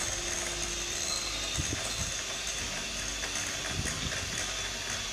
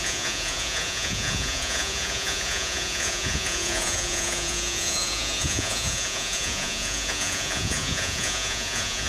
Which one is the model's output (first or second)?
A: second